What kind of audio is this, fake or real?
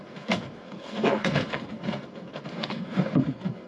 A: fake